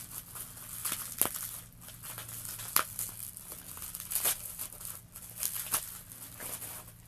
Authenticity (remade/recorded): recorded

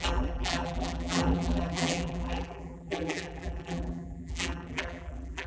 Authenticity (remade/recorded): remade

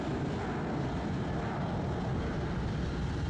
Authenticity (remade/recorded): recorded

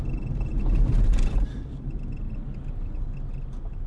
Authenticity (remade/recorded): recorded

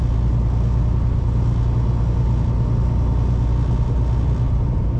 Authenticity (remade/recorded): recorded